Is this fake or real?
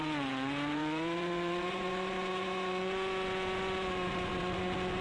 fake